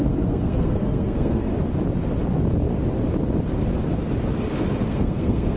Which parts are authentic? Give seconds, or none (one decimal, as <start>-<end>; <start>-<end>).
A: 1.5-4.9